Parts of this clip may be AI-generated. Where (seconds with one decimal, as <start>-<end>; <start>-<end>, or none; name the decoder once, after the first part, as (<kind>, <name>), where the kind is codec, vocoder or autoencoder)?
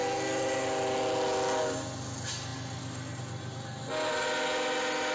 none